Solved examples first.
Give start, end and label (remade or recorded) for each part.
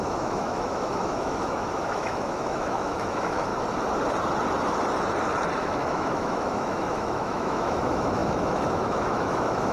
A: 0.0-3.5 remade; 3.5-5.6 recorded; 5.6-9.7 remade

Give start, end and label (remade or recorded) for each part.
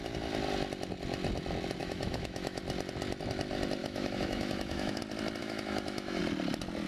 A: 0.0-1.8 recorded; 1.8-2.6 remade; 2.6-3.8 recorded; 3.8-5.0 remade; 5.0-5.4 recorded; 5.4-6.2 remade; 6.2-6.9 recorded